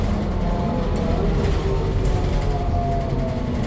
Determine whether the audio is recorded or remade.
recorded